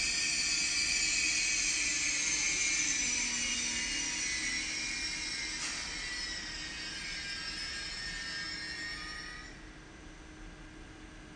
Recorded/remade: recorded